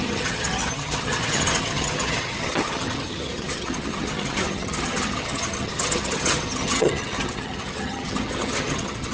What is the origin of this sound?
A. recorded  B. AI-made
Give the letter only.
B